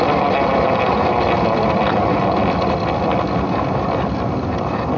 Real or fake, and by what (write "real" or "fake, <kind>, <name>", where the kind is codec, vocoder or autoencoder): real